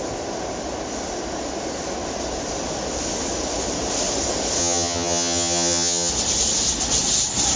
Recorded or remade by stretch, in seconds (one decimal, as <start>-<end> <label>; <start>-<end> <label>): 0.0-4.6 recorded; 4.6-6.1 remade; 6.1-7.6 recorded